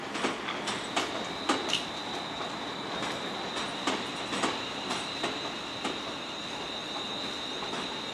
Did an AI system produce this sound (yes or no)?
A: no